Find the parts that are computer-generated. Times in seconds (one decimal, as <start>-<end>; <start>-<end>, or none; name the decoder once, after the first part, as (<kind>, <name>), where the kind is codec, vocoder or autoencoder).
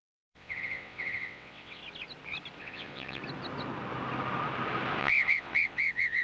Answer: 0.0-1.8 (vocoder, WaveNeXt); 2.6-3.2; 5.0-6.2